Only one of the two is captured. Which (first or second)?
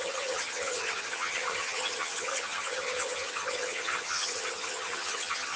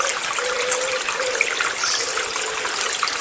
second